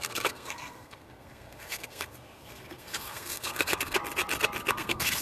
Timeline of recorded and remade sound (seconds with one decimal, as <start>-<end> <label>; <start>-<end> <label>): 0.0-4.0 remade; 4.0-4.7 recorded; 4.7-5.2 remade